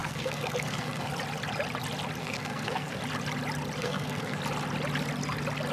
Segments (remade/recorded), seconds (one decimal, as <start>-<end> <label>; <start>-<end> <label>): 0.0-1.1 remade; 1.1-2.2 recorded; 2.2-3.0 remade; 3.0-3.8 recorded; 3.8-4.4 remade; 4.4-5.7 recorded